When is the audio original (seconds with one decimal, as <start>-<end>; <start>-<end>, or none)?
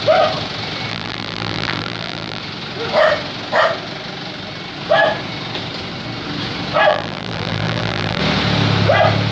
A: 0.0-0.9; 2.4-6.9; 8.2-9.3